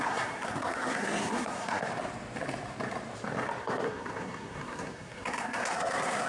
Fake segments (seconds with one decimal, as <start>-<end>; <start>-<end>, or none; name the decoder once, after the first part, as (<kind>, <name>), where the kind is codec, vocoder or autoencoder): 0.0-1.9 (codec, SNAC); 3.6-6.3

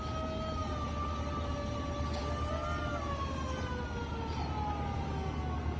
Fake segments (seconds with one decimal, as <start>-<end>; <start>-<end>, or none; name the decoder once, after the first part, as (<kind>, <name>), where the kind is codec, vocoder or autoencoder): none